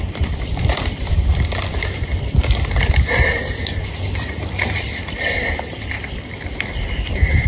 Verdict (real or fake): fake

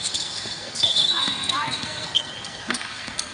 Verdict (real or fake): fake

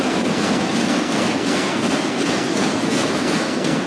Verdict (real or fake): fake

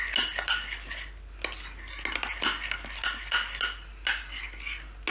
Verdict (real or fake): real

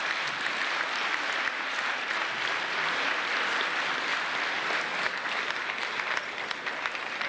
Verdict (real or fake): real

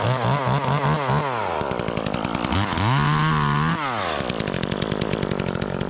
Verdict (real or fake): real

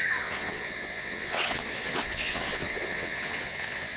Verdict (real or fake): fake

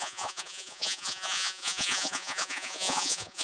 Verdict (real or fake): fake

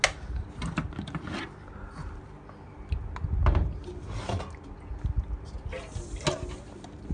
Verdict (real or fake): real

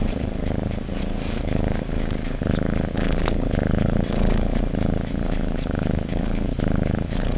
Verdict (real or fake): fake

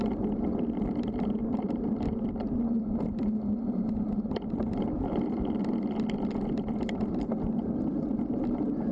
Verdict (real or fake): fake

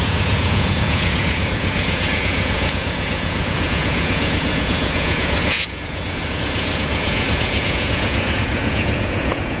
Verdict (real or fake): fake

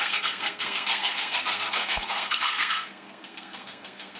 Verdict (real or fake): fake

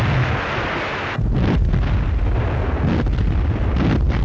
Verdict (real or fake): real